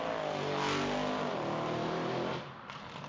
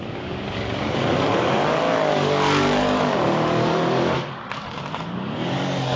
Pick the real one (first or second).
first